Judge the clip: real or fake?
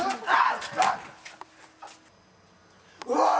real